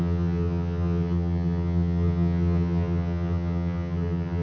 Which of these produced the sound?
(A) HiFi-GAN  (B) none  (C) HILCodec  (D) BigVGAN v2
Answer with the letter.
A